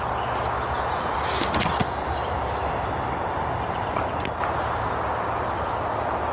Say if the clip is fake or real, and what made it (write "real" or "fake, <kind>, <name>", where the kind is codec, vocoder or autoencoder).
real